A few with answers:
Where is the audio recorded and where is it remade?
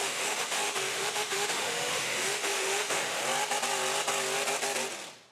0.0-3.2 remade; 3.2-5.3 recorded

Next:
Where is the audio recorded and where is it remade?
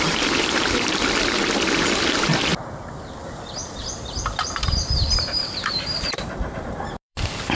0.0-3.6 recorded; 3.6-7.6 remade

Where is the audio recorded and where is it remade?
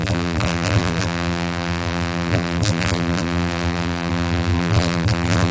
0.0-5.5 remade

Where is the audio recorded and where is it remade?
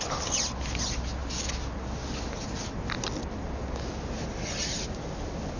0.0-5.6 recorded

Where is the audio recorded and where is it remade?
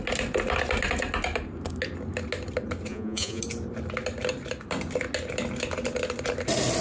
0.0-2.9 recorded; 2.9-3.4 remade; 3.4-6.8 recorded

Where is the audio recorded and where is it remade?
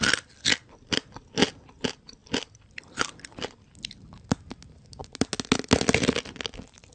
0.0-2.2 recorded; 2.2-2.8 remade; 2.8-6.9 recorded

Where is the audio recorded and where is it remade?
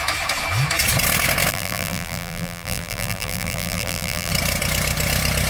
0.0-1.5 recorded; 1.5-4.3 remade; 4.3-5.5 recorded